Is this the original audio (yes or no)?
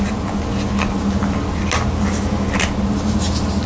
yes